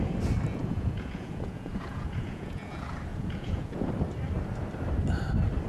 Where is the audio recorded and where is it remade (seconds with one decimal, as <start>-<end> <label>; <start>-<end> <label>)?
0.0-0.6 recorded; 0.6-2.7 remade; 2.7-3.1 recorded; 3.1-3.9 remade; 3.9-5.7 recorded